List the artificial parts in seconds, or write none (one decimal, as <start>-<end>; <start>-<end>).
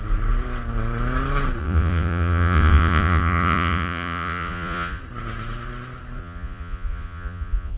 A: 1.6-5.0; 6.2-7.8